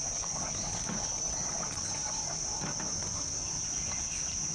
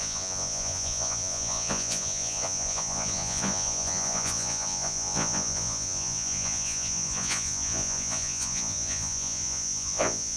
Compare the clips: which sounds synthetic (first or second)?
second